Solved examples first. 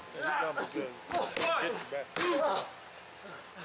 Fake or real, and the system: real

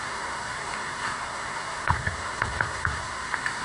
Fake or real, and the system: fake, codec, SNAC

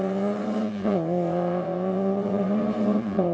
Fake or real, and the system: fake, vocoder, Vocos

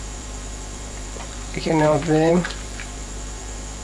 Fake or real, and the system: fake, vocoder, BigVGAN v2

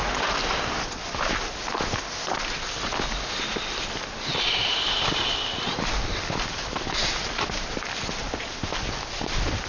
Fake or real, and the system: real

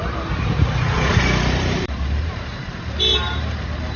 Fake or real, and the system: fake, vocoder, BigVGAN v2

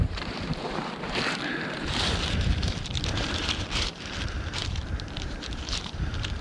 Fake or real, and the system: fake, vocoder, BigVGAN v2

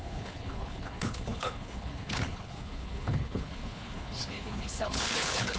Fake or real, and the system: fake, codec, HILCodec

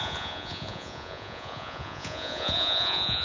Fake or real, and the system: fake, vocoder, Vocos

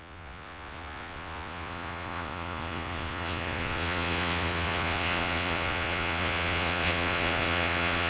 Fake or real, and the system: fake, vocoder, Vocos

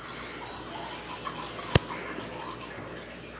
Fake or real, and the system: real